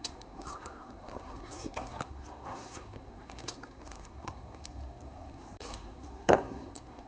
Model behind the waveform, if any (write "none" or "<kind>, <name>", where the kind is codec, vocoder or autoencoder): codec, SNAC